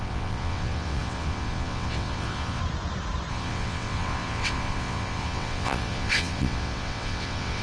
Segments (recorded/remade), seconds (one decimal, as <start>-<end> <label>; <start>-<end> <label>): 0.0-2.6 remade; 2.6-3.3 recorded; 3.3-7.6 remade